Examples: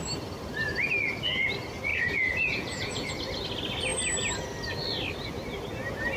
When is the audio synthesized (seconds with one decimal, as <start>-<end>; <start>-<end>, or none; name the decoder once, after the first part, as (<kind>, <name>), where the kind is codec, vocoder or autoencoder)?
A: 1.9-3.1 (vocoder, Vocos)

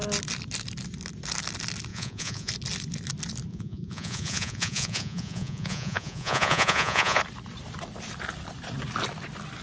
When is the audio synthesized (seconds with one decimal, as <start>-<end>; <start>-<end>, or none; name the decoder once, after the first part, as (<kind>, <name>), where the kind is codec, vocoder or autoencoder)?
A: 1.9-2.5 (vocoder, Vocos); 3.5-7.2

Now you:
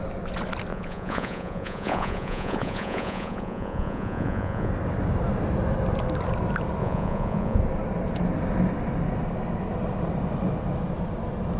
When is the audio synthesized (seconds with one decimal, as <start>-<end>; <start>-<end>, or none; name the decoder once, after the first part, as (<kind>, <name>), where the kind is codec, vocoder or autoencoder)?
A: 0.7-4.7 (vocoder, Vocos); 6.8-7.6

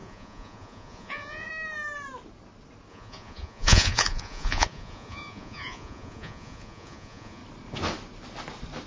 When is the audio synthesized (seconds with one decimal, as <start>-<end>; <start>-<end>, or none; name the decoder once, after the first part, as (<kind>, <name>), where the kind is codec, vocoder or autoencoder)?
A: 0.0-1.5 (vocoder, Vocos); 2.9-7.4

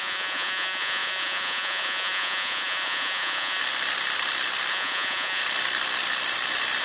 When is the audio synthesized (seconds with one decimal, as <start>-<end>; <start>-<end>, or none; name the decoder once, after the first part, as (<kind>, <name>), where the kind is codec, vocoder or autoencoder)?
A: 0.0-3.6 (vocoder, Vocos); 4.7-5.4

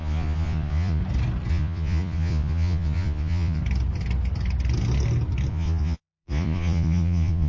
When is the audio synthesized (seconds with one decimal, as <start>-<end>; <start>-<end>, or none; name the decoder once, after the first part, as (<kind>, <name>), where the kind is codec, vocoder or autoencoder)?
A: 0.0-1.0 (vocoder, Vocos); 1.5-3.6; 5.5-7.5